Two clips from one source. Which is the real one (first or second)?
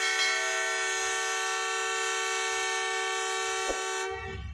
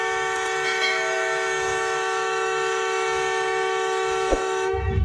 first